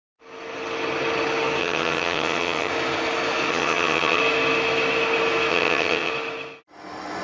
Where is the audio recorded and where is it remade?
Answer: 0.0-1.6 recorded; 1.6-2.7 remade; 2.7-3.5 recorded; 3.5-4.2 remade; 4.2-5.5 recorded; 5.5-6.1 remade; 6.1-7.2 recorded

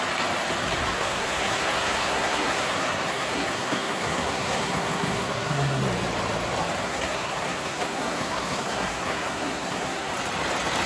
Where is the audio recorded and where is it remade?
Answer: 0.0-0.9 recorded; 0.9-5.8 remade; 5.8-6.8 recorded; 6.8-10.1 remade; 10.1-10.9 recorded